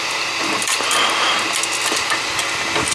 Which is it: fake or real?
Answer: real